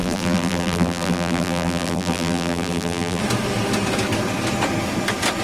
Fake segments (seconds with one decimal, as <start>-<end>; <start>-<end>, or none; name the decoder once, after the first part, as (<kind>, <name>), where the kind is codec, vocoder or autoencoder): 0.0-3.2 (vocoder, BigVGAN v2)